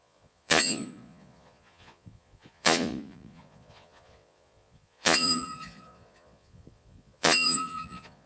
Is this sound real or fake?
fake